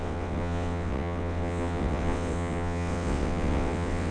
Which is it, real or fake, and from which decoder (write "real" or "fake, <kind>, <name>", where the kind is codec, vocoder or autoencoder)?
fake, vocoder, WaveNeXt